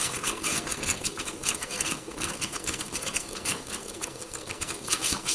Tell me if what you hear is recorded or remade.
remade